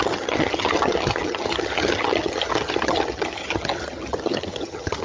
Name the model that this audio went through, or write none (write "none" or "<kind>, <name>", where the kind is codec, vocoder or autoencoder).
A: vocoder, HiFi-GAN